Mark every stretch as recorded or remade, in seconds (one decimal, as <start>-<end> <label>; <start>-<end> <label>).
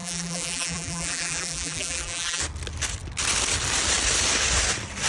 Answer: 0.0-2.4 remade; 2.4-5.1 recorded